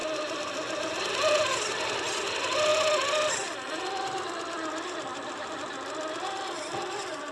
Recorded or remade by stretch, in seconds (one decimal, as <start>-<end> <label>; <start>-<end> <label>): 0.0-1.4 remade; 1.4-7.3 recorded